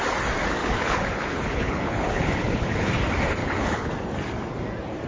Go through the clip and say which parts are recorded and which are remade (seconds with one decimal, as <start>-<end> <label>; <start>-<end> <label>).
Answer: 0.0-0.6 recorded; 0.6-2.9 remade; 2.9-3.4 recorded; 3.4-3.9 remade; 3.9-5.1 recorded